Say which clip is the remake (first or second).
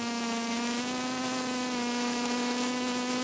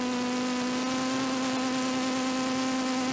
first